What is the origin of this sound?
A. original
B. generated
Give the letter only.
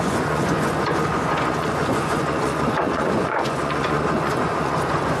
B